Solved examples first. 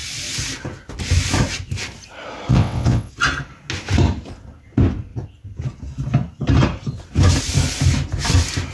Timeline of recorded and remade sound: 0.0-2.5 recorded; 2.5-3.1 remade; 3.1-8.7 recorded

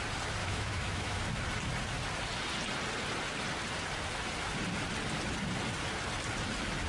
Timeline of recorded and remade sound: 0.0-0.4 recorded; 0.4-1.2 remade; 1.2-6.9 recorded

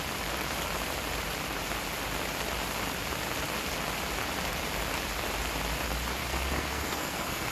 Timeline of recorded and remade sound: 0.0-6.2 recorded; 6.2-7.5 remade

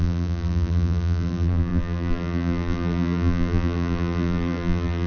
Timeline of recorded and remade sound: 0.0-5.1 remade

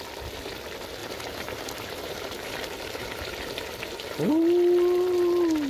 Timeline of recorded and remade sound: 0.0-1.0 recorded; 1.0-4.4 remade; 4.4-5.7 recorded

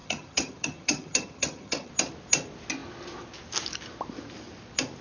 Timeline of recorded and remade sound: 0.0-1.9 remade; 1.9-5.0 recorded

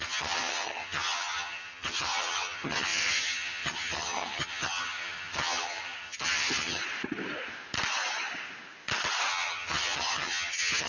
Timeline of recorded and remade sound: 0.0-6.8 remade; 6.8-9.3 recorded; 9.3-10.9 remade